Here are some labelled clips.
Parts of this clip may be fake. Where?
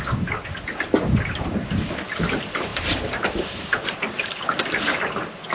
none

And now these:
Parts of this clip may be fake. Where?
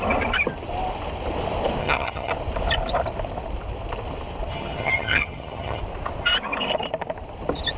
1.8-2.3 (vocoder, HiFi-GAN); 4.5-5.8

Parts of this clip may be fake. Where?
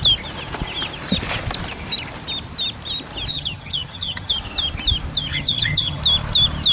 3.3-4.3 (vocoder, HiFi-GAN); 5.3-6.0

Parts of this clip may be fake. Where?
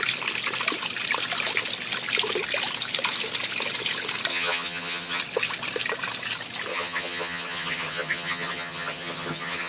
4.3-5.2 (vocoder, HiFi-GAN); 6.7-9.7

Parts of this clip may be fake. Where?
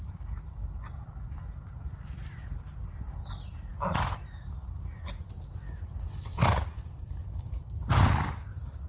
none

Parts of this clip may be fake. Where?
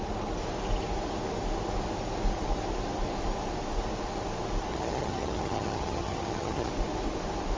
4.7-6.7 (vocoder, HiFi-GAN)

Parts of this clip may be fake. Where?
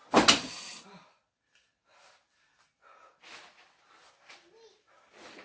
none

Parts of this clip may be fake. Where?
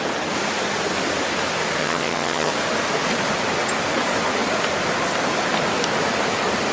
1.8-2.5 (vocoder, HiFi-GAN)